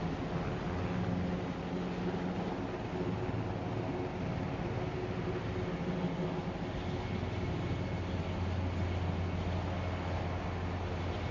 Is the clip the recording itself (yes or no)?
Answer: yes